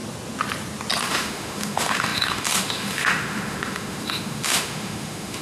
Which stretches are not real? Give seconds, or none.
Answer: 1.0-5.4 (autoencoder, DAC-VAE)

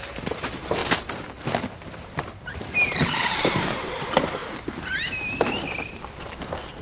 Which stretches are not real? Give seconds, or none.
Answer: 0.0-6.8 (vocoder, BigVGAN v2)